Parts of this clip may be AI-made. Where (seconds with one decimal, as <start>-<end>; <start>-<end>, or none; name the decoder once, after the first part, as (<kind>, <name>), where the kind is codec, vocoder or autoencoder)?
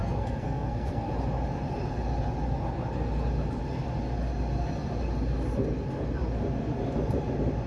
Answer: 0.0-1.1 (codec, SNAC)